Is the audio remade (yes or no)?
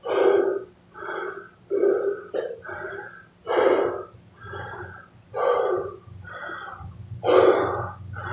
no